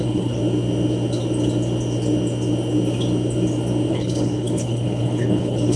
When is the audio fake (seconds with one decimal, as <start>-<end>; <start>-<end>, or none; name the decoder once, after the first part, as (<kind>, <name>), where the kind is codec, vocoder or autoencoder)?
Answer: 0.0-0.4 (codec, HILCodec); 3.9-5.8